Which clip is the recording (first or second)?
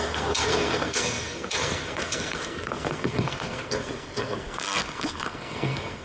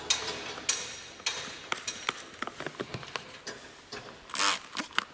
second